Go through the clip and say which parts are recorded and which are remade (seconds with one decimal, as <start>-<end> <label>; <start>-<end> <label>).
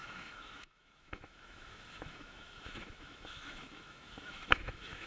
0.0-5.1 remade